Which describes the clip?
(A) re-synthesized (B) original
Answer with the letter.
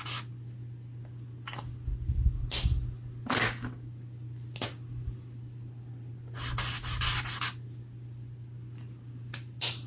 B